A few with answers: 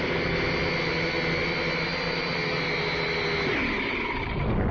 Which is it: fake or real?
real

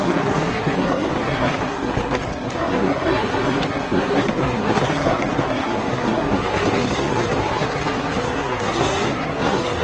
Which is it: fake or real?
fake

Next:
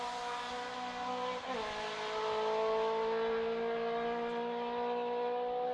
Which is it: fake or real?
real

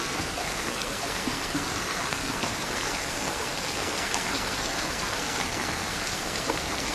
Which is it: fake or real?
fake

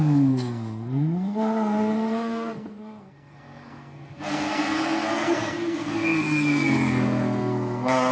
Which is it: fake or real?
fake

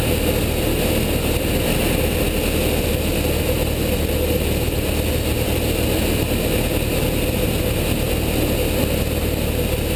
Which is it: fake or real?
real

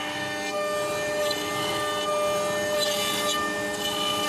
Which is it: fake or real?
real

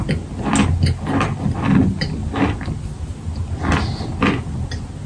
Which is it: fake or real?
real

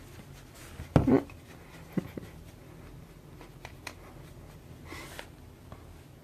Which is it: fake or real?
real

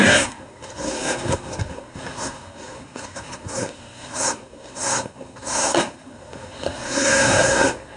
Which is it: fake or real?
fake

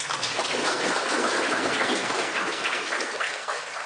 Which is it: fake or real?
fake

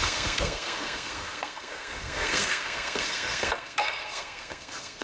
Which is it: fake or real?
fake